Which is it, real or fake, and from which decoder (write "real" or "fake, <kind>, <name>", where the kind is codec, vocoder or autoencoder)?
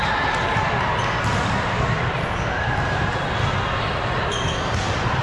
real